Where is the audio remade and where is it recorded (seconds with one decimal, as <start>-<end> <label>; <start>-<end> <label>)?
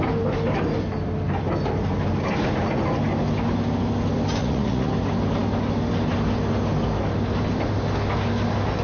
0.0-4.4 recorded; 4.4-4.9 remade; 4.9-8.8 recorded